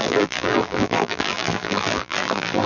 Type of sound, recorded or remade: remade